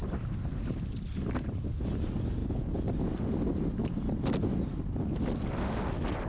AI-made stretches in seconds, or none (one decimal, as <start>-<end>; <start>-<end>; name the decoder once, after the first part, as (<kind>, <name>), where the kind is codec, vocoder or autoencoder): none